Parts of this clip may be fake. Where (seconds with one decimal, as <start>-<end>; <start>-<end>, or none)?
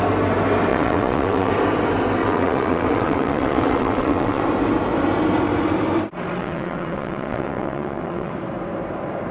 0.7-1.5; 2.2-4.4; 6.4-8.3